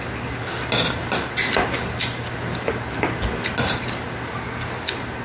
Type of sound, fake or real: real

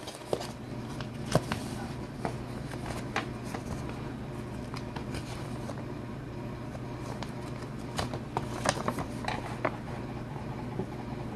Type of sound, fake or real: real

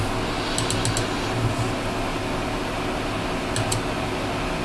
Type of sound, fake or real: real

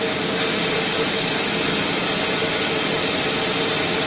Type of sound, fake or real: real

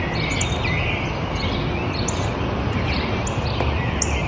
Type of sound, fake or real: real